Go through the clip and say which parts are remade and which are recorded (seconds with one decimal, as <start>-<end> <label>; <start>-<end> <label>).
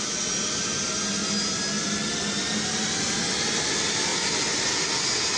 0.0-5.4 recorded